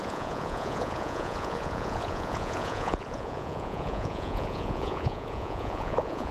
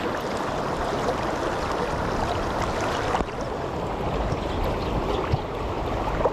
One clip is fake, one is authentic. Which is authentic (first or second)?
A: second